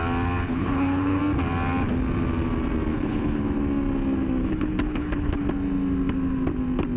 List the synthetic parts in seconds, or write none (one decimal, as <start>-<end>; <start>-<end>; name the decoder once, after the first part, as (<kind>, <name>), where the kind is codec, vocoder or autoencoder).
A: 0.5-1.2 (codec, HILCodec); 2.9-3.4; 4.4-5.4